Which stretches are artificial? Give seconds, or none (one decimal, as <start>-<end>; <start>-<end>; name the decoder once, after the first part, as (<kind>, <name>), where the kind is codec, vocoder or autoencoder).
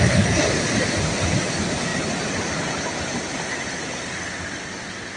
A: none